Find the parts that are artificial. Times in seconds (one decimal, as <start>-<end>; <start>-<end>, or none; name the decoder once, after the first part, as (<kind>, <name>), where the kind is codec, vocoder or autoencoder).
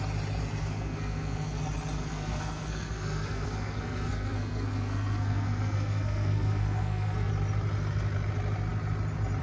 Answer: 0.6-1.6 (codec, SNAC); 2.0-7.3